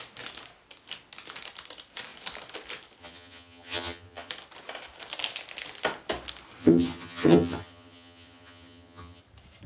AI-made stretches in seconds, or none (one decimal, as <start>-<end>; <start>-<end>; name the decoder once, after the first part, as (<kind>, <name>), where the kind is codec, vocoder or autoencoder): 3.0-4.3 (vocoder, HiFi-GAN); 6.6-9.2